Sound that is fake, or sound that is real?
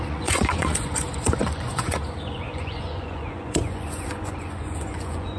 fake